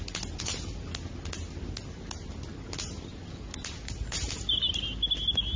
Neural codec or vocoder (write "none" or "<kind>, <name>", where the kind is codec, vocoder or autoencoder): none